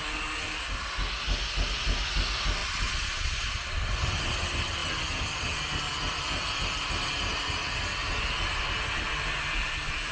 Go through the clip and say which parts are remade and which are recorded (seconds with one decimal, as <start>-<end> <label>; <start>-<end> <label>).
0.0-10.1 recorded

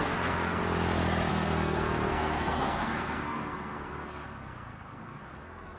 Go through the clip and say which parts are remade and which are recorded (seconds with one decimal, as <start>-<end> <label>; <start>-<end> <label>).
0.0-0.6 remade; 0.6-1.3 recorded; 1.3-5.8 remade